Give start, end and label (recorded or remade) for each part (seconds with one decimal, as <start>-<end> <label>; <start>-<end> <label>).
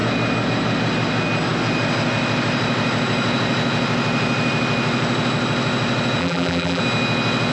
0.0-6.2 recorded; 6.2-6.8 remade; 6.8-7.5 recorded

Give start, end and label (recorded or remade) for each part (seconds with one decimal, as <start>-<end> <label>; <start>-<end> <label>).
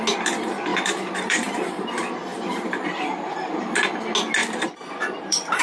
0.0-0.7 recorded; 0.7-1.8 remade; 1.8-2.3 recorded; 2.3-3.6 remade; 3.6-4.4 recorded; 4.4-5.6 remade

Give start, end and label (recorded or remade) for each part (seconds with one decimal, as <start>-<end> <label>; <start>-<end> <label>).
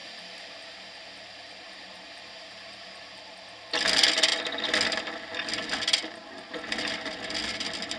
0.0-3.3 remade; 3.3-8.0 recorded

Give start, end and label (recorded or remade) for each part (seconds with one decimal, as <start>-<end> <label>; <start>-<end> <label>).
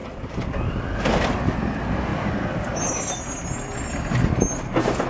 0.0-5.1 recorded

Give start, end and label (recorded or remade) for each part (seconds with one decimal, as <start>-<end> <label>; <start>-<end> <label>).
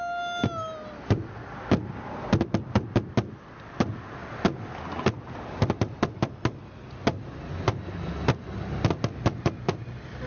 0.0-10.3 recorded